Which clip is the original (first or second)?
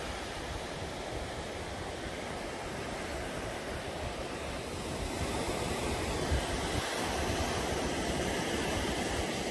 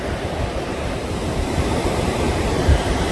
first